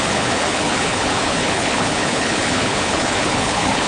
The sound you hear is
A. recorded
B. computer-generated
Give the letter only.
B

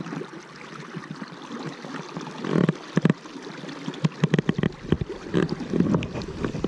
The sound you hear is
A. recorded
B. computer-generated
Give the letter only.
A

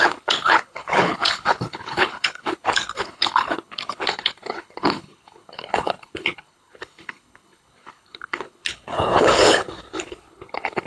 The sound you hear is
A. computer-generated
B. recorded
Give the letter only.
A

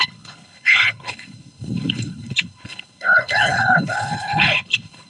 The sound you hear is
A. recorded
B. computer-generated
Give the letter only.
B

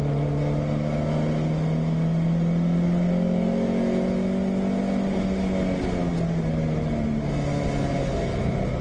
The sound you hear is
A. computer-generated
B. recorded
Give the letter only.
B